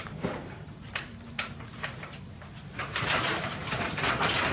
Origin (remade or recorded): remade